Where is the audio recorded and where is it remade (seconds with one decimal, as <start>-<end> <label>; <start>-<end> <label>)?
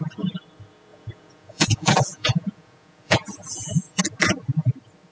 0.0-0.9 recorded; 0.9-4.0 remade; 4.0-5.1 recorded